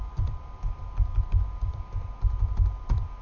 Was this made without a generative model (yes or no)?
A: yes